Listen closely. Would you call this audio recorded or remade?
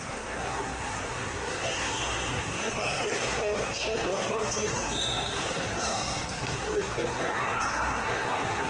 remade